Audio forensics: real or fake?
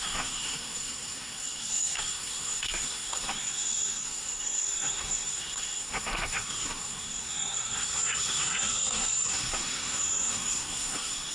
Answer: fake